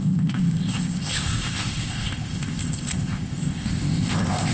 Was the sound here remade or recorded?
remade